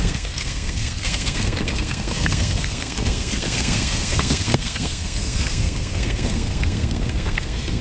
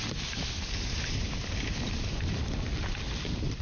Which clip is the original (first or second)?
second